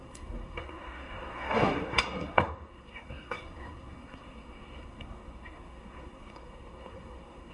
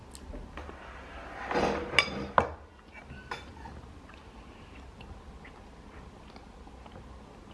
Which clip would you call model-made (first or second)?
first